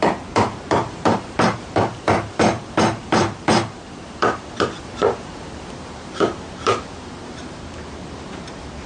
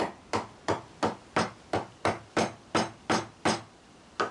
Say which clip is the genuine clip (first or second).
second